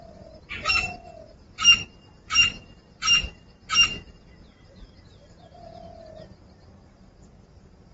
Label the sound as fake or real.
fake